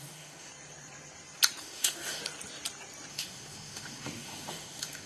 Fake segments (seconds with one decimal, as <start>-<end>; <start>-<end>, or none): 0.0-0.5; 1.6-2.2; 3.1-5.1